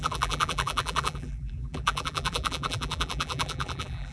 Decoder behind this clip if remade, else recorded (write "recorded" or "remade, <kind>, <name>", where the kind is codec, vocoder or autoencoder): remade, vocoder, BigVGAN v2